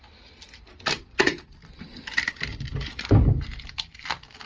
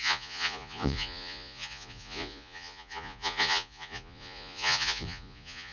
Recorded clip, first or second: first